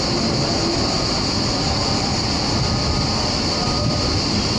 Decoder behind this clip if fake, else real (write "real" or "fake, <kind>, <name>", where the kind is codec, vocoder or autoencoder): real